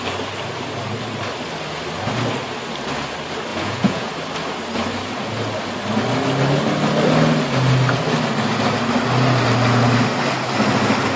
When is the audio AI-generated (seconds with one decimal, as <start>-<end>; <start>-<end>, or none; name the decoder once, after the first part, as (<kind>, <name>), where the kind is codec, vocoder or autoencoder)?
3.5-4.1 (vocoder, Vocos)